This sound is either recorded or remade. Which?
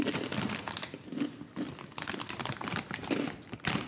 recorded